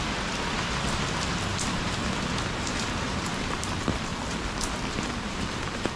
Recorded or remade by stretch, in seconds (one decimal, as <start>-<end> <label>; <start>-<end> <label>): 0.0-4.1 remade; 4.1-5.3 recorded; 5.3-6.0 remade